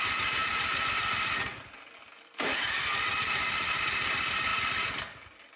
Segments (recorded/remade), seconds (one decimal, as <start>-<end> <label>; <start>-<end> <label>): 0.0-4.5 remade; 4.5-5.0 recorded; 5.0-5.6 remade